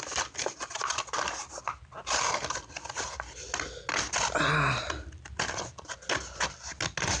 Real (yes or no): yes